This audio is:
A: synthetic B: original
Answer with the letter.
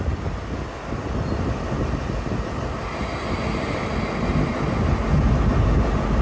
B